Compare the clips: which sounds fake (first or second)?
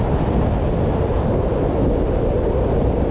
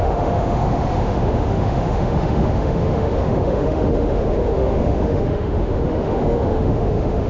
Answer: second